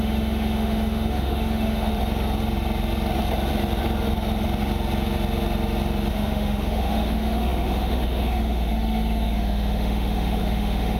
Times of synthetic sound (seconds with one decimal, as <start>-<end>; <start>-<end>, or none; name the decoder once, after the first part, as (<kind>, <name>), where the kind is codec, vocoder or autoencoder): 0.0-1.9 (autoencoder, DAC-VAE); 6.1-11.0